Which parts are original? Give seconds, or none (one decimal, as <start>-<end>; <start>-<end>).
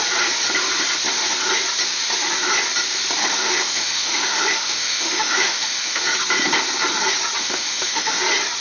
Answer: 0.0-3.2; 6.0-7.4; 8.2-8.6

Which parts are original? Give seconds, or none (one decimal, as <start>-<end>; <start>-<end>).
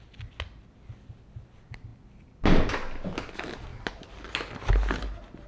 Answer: 0.0-5.5